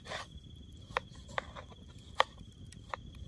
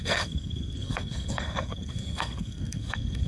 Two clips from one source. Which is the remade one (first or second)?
second